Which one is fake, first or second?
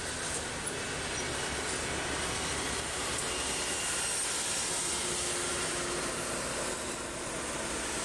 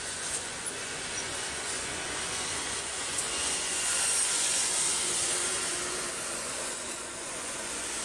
second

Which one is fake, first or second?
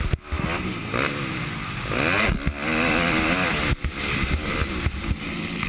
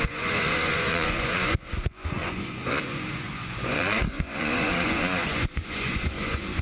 second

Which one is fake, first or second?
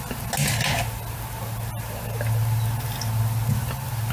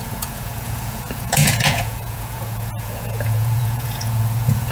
second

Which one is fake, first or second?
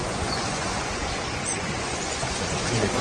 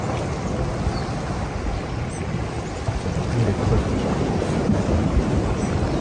first